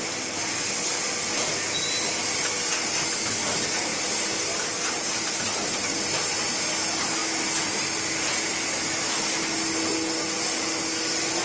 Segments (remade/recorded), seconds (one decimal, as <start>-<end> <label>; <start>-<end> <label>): 0.0-11.4 recorded